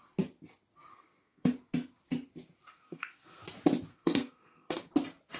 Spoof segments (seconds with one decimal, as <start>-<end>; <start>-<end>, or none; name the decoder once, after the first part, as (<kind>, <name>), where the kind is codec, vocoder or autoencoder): 0.9-1.5 (codec, SNAC); 2.7-3.4; 3.9-4.8